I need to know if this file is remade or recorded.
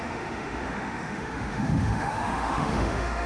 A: remade